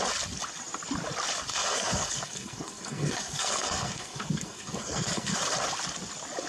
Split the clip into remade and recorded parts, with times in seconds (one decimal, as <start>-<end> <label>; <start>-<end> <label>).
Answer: 0.0-1.5 recorded; 1.5-5.4 remade; 5.4-6.5 recorded